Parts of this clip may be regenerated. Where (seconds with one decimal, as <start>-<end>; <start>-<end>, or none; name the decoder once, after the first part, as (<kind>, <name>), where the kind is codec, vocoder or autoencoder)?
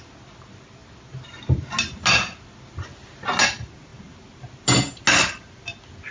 none